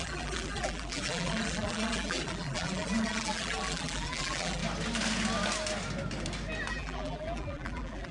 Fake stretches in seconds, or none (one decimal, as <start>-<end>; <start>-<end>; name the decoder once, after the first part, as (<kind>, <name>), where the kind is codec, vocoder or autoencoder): 0.0-4.6 (vocoder, BigVGAN v2); 6.7-8.1